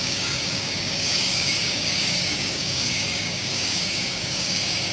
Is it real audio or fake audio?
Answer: fake